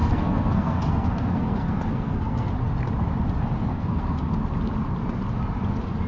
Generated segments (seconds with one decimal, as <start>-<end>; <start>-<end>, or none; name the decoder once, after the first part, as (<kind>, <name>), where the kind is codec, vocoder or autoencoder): 0.0-2.5 (codec, SNAC); 3.7-4.2